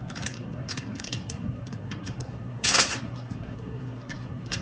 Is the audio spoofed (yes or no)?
yes